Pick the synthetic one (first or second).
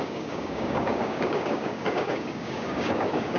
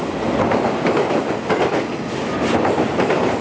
first